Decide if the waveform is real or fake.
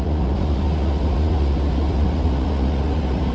fake